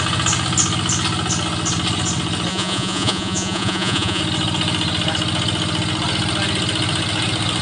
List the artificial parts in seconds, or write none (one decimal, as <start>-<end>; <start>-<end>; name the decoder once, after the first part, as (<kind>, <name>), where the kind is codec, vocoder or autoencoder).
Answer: 2.5-4.2 (vocoder, Vocos)